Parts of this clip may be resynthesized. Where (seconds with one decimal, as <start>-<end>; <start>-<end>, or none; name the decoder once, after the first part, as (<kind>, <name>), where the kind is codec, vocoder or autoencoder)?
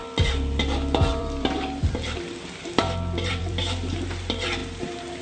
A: 1.2-3.9 (vocoder, BigVGAN v2)